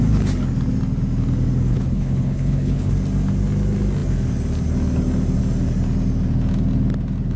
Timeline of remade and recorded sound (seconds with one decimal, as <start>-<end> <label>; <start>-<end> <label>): 0.0-1.7 recorded; 1.7-2.9 remade; 2.9-7.4 recorded